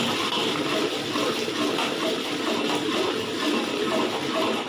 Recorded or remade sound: recorded